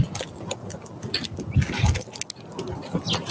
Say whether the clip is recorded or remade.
recorded